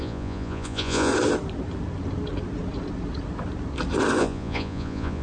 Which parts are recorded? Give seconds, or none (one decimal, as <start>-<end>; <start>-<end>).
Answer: 1.1-4.2